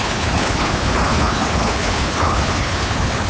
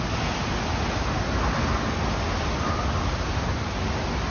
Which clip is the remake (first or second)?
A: first